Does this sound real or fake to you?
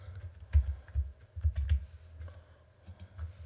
real